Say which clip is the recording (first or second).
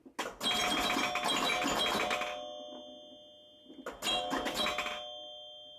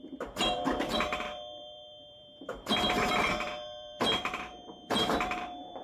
first